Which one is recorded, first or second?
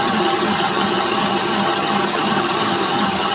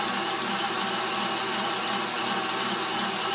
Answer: second